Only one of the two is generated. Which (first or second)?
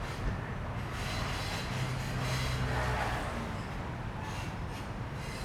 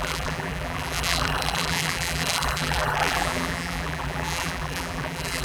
second